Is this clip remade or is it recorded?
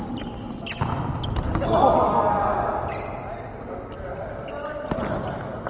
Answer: recorded